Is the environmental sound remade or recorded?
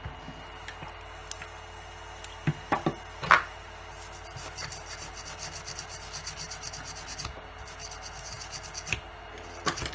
recorded